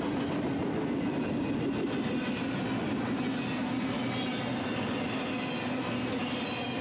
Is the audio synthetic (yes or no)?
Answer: no